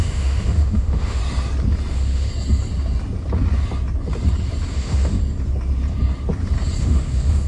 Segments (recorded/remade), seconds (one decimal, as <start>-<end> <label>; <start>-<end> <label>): 0.0-1.2 remade; 1.2-1.9 recorded; 1.9-2.3 remade; 2.3-4.7 recorded; 4.7-5.2 remade; 5.2-6.8 recorded; 6.8-7.5 remade